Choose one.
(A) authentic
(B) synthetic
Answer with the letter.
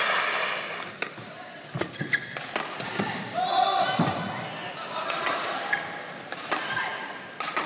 A